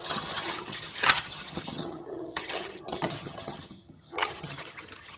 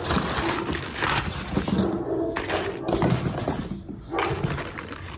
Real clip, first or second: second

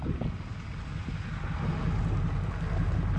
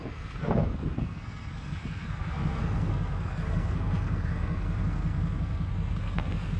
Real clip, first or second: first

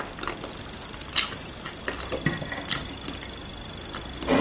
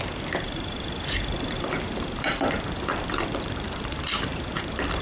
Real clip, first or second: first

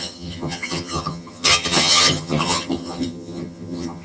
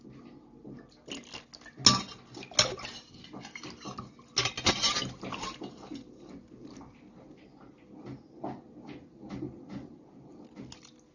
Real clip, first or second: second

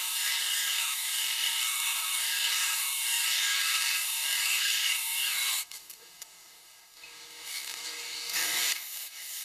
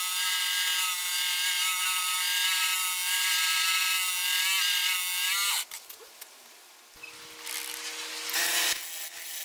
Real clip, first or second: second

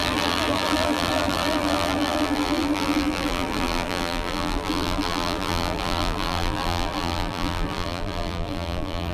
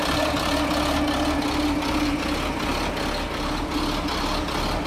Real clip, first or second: second